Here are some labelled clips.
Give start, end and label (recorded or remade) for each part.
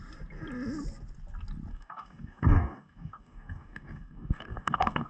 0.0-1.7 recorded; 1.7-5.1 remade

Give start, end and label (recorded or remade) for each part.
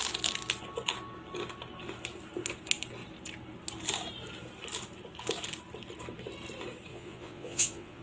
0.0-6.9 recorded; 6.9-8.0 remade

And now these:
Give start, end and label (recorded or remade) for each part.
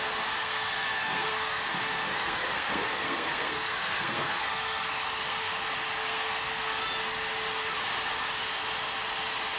0.0-0.4 recorded; 0.4-1.6 remade; 1.6-2.1 recorded; 2.1-5.5 remade; 5.5-6.0 recorded; 6.0-6.8 remade; 6.8-9.6 recorded